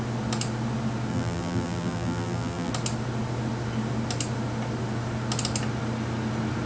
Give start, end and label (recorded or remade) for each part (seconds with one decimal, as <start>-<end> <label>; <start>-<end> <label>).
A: 0.0-1.1 recorded; 1.1-2.7 remade; 2.7-6.7 recorded